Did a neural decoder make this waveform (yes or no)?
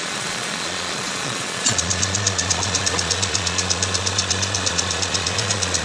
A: yes